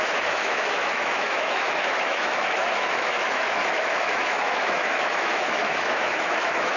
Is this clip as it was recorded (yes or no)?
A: no